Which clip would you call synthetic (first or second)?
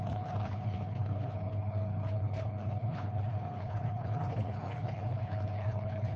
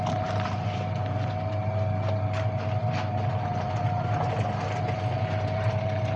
first